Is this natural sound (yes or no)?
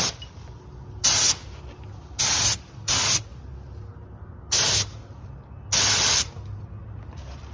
yes